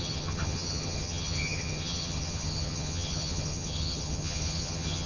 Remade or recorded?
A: remade